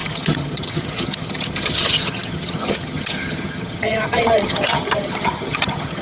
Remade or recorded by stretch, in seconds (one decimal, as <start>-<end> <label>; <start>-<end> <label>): 0.0-6.0 remade